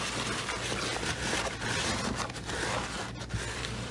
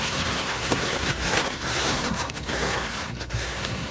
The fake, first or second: second